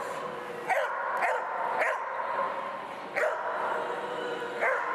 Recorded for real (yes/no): yes